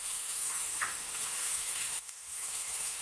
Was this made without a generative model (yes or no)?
no